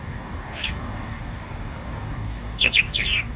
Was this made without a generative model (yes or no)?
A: no